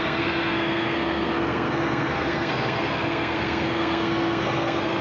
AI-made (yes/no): yes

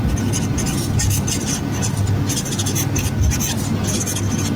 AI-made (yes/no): no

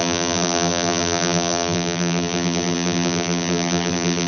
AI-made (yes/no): yes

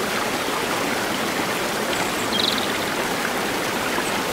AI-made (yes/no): no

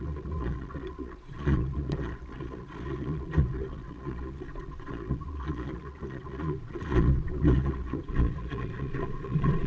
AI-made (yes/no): yes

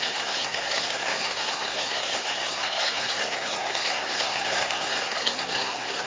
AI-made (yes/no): yes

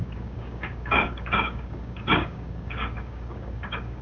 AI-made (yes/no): yes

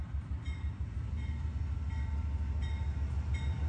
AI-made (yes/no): no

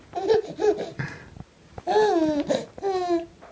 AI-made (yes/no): no